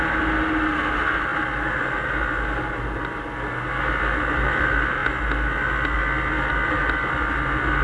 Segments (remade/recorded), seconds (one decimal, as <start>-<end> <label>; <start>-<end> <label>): 0.0-7.8 recorded